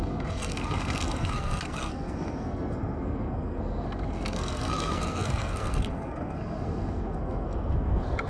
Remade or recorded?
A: remade